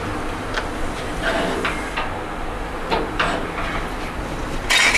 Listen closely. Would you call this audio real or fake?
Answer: real